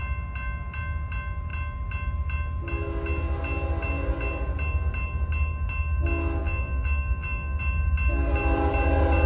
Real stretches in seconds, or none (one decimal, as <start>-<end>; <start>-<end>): 0.0-6.4; 7.6-9.3